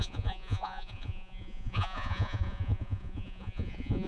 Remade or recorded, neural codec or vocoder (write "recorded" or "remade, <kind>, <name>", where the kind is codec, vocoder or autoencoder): remade, vocoder, Vocos